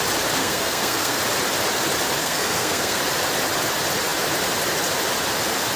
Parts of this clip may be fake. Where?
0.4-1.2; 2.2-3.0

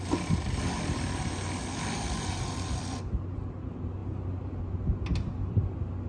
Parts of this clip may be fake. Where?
none

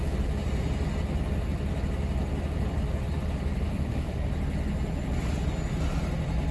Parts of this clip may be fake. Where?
3.7-4.3

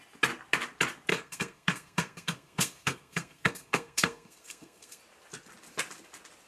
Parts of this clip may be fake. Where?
1.1-5.0